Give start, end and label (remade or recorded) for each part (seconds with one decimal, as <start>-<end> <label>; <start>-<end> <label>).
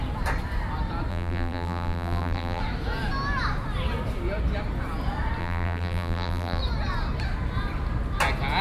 0.0-1.1 recorded; 1.1-2.6 remade; 2.6-5.4 recorded; 5.4-6.6 remade; 6.6-8.6 recorded